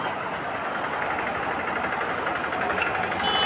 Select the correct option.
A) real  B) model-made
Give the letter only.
A